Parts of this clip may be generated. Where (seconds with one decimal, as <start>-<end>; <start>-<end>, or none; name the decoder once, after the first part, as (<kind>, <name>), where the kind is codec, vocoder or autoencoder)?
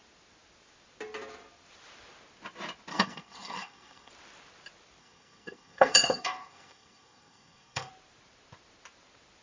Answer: 2.9-4.1 (codec, SNAC); 5.0-7.9